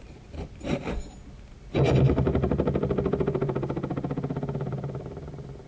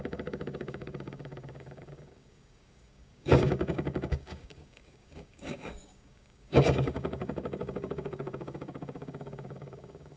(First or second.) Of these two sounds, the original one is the first